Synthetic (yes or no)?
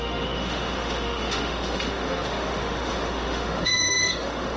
yes